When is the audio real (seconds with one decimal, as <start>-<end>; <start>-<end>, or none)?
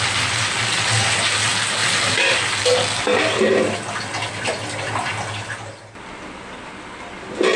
0.0-7.6